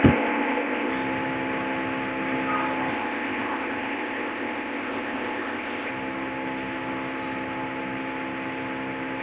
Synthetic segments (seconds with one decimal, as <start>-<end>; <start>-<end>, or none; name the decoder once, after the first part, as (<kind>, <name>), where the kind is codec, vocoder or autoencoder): 0.0-0.9 (codec, ZipCodec); 2.9-5.9